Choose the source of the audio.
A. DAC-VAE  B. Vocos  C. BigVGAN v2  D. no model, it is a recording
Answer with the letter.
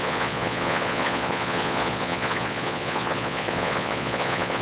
B